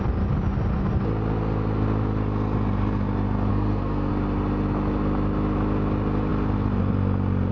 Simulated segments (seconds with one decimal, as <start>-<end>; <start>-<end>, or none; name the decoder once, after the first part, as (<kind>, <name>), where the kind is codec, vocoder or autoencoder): 3.5-4.1 (codec, SNAC)